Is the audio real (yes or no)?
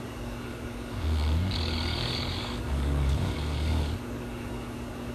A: no